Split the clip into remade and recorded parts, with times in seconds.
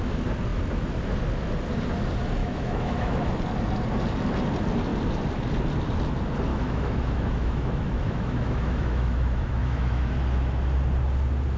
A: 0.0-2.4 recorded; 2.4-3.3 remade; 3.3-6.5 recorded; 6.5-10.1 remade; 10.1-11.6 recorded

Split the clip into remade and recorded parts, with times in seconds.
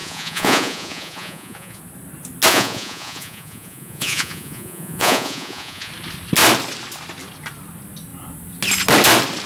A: 0.0-1.8 remade; 1.8-2.5 recorded; 2.5-5.9 remade; 5.9-9.5 recorded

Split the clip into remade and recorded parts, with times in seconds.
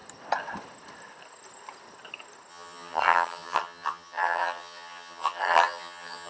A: 0.0-2.5 recorded; 2.5-6.3 remade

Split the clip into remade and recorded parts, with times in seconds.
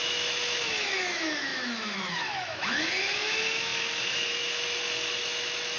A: 0.0-5.8 remade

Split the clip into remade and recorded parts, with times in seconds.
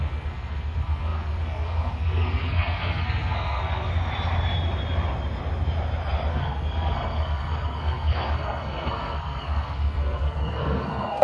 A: 0.0-3.9 remade; 3.9-6.3 recorded; 6.3-11.2 remade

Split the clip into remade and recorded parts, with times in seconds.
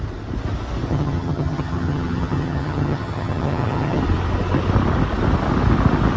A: 0.0-0.9 recorded; 0.9-4.0 remade; 4.0-6.2 recorded